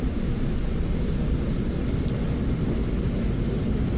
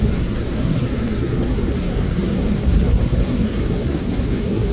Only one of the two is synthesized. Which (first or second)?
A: second